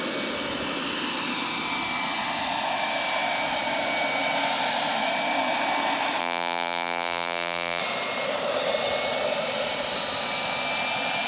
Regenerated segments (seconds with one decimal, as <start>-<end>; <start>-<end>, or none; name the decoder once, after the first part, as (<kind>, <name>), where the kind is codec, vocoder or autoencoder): 6.2-7.8 (vocoder, BigVGAN v2)